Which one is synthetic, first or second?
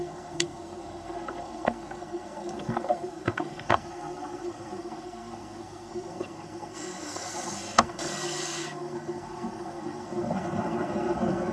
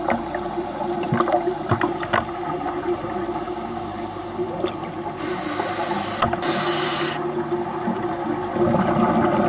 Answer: first